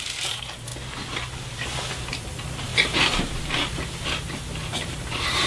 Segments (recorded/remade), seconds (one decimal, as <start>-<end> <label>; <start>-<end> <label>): 0.0-0.7 remade; 0.7-2.1 recorded; 2.1-5.5 remade